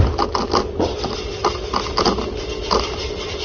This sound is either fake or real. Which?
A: real